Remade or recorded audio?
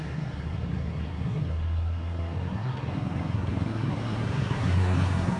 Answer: remade